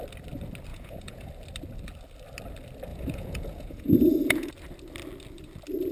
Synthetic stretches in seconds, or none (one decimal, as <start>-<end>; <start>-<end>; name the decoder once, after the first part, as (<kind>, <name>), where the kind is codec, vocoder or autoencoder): 0.7-1.3 (vocoder, Vocos); 2.9-4.5